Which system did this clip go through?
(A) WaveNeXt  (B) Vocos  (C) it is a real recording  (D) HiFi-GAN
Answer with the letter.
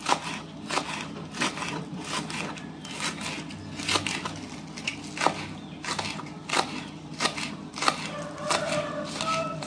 C